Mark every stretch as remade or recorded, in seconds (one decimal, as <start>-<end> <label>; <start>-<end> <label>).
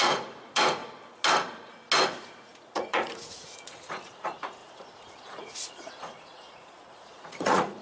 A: 0.0-0.8 remade; 0.8-2.2 recorded; 2.2-7.8 remade